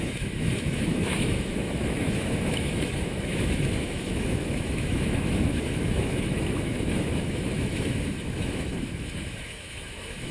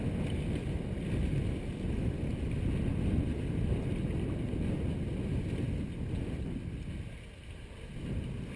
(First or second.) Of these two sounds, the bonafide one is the second